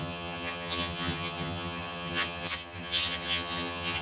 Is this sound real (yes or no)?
no